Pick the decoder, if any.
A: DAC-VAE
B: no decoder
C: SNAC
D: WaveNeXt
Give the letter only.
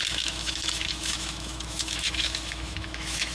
A